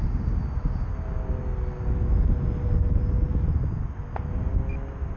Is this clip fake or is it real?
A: real